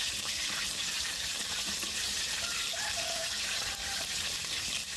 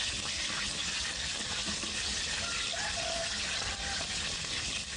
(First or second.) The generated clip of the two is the first